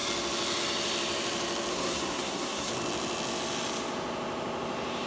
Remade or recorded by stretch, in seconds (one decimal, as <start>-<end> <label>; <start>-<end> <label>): 0.0-1.7 recorded; 1.7-2.7 remade; 2.7-5.1 recorded